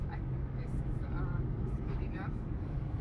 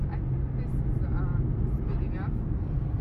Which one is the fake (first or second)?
first